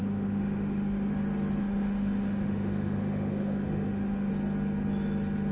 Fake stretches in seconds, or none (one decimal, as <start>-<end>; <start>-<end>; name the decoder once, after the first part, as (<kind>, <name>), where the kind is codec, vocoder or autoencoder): 0.0-1.1 (autoencoder, DAC-VAE); 1.6-4.3